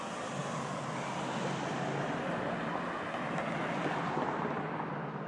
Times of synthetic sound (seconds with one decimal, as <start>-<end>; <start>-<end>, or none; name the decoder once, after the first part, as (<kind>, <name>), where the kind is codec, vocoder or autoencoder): none